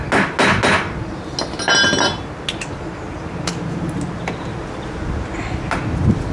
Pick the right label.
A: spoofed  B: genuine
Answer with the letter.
B